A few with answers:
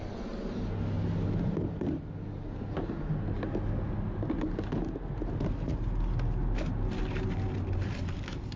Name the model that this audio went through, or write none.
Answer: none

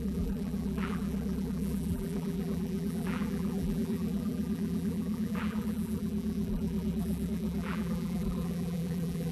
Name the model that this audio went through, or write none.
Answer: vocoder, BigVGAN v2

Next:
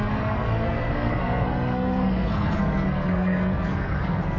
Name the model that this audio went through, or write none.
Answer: codec, SNAC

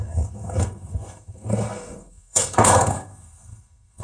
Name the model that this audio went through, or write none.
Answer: codec, SNAC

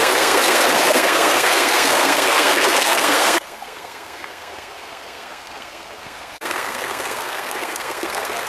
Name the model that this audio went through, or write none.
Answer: codec, SNAC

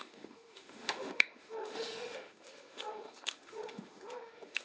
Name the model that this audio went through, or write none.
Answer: autoencoder, DAC-VAE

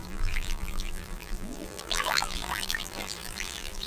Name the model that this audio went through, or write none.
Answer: vocoder, BigVGAN v2